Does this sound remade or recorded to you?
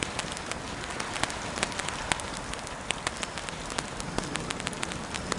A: recorded